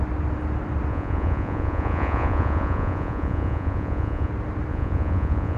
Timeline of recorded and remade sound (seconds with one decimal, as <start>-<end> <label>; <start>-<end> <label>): 0.0-0.9 recorded; 0.9-4.3 remade; 4.3-4.7 recorded; 4.7-5.6 remade